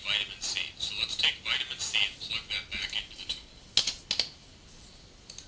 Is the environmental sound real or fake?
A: real